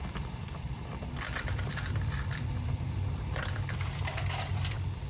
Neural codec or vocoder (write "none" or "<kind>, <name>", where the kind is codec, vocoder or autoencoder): vocoder, BigVGAN v2